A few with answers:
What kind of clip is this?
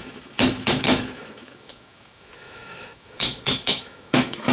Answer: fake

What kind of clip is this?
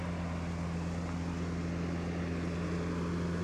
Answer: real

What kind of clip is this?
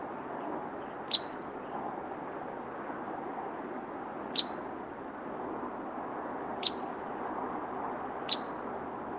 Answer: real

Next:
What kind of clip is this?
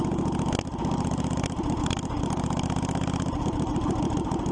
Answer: real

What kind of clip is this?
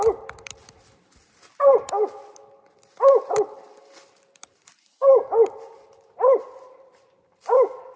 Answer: real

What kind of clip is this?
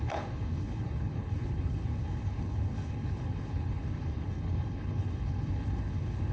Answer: fake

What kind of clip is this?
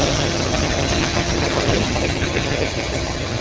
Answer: fake